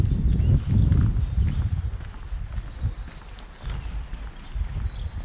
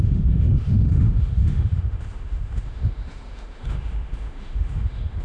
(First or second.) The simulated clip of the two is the second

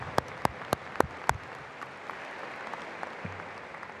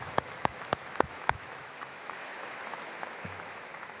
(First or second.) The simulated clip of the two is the second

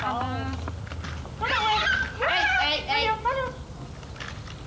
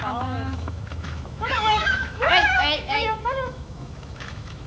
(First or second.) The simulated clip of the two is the second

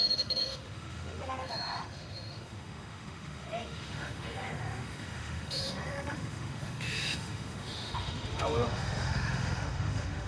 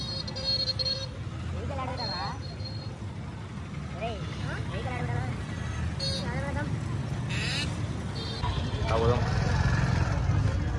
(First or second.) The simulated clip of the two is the first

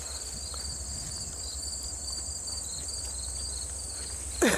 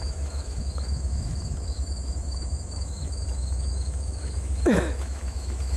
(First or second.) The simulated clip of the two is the second